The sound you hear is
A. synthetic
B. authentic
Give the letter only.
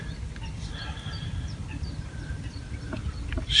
B